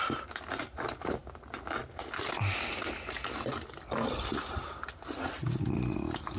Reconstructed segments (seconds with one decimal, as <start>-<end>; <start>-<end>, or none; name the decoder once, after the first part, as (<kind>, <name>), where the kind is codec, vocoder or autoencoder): none